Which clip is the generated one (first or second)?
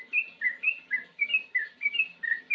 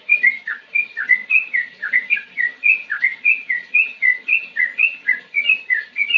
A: second